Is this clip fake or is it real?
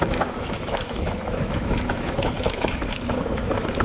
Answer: fake